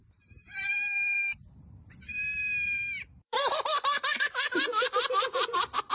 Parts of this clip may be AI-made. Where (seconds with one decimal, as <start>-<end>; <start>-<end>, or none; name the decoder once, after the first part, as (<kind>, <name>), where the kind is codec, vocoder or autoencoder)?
0.0-5.9 (vocoder, BigVGAN v2)